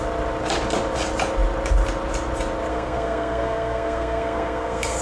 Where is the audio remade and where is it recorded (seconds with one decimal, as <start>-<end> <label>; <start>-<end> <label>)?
0.0-2.7 recorded; 2.7-5.0 remade